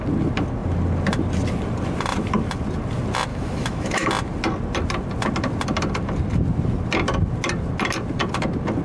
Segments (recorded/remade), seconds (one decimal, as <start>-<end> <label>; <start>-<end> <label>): 0.0-3.3 recorded; 3.3-4.1 remade; 4.1-8.8 recorded